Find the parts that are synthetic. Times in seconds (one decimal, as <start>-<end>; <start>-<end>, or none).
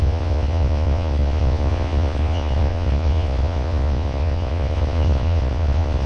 0.0-6.1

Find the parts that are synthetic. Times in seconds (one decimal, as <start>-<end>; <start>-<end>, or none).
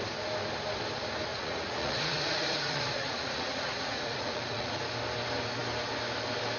1.3-4.9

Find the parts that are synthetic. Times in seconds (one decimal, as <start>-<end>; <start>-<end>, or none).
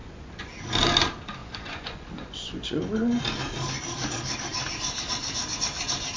0.0-0.5; 1.4-3.2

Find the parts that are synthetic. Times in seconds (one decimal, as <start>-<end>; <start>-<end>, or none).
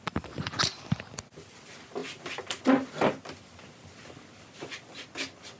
none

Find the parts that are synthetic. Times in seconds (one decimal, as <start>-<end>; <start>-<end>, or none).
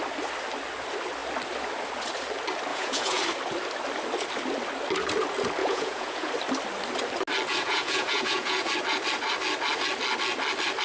2.7-3.2; 5.6-6.3; 7.5-8.7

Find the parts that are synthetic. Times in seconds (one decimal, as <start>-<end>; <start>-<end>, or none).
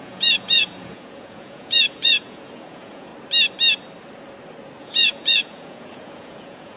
0.0-3.1; 4.8-6.8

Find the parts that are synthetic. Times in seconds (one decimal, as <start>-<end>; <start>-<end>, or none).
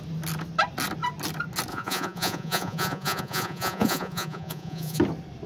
1.7-5.0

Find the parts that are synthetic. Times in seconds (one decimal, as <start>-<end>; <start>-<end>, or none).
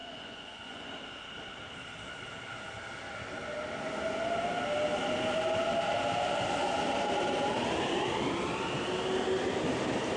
0.0-0.9